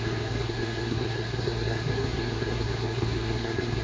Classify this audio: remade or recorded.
remade